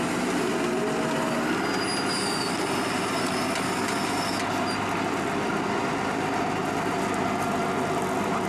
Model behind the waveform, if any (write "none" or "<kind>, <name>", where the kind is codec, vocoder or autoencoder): none